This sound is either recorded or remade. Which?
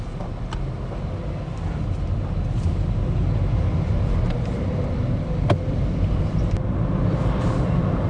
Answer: recorded